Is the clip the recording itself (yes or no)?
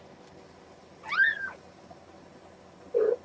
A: yes